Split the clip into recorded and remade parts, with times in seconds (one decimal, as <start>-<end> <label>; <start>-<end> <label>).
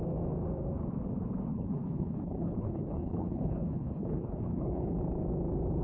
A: 0.0-1.5 recorded; 1.5-5.0 remade; 5.0-5.8 recorded